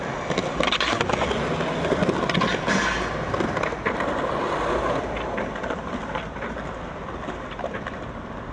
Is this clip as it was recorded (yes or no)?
yes